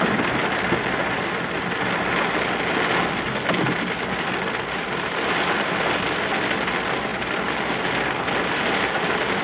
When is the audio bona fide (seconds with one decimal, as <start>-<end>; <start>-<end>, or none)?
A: 0.0-9.4